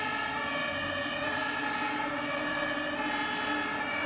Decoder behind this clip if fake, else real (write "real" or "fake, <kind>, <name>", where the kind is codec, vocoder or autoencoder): real